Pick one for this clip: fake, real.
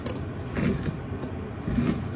real